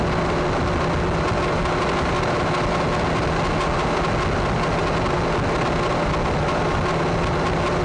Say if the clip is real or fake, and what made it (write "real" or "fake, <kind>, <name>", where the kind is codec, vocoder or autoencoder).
real